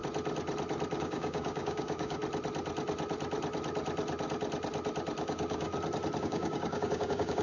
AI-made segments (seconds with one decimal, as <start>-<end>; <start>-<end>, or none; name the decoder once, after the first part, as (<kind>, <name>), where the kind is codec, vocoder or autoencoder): 1.0-2.2 (codec, DAC); 5.2-5.7; 6.2-7.4